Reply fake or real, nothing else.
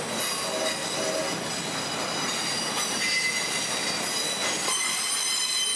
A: real